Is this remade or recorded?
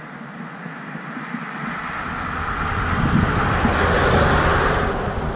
recorded